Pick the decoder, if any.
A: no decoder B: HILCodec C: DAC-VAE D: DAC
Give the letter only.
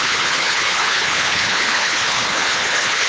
B